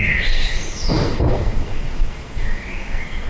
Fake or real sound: fake